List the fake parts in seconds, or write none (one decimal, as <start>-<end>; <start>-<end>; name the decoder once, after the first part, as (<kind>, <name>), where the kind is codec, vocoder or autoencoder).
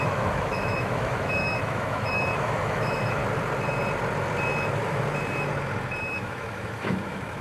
0.0-3.2 (autoencoder, DAC-VAE); 6.0-7.4